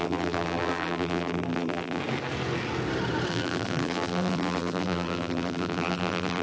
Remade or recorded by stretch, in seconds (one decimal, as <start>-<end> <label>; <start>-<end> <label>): 0.0-2.0 remade; 2.0-3.3 recorded; 3.3-6.4 remade